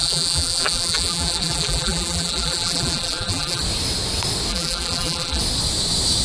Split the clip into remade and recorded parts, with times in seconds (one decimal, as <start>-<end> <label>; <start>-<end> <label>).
0.0-3.6 remade; 3.6-4.5 recorded; 4.5-5.4 remade; 5.4-6.2 recorded